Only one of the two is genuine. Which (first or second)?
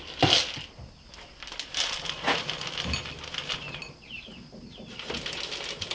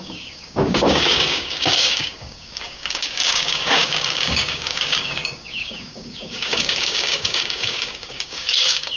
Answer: first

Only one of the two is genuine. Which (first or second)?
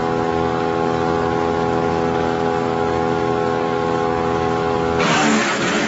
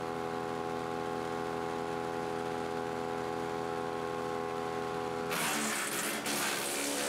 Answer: second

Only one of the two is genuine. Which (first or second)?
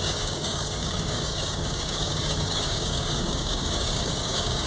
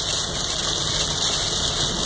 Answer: second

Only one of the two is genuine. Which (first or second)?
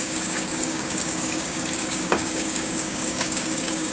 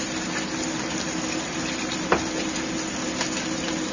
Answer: second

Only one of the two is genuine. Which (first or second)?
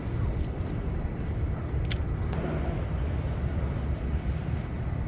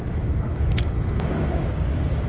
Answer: first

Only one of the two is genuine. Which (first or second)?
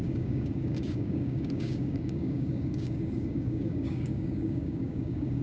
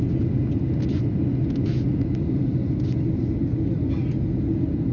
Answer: second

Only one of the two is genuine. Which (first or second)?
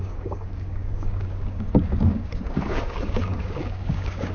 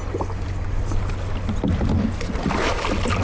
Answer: second